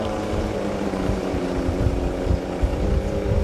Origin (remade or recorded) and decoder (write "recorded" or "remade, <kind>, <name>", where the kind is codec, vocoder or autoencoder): remade, vocoder, BigVGAN v2